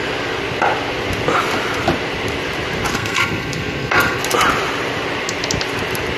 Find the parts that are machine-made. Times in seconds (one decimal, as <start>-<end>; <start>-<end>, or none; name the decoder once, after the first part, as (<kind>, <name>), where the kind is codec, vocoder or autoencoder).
2.9-4.2 (codec, SNAC)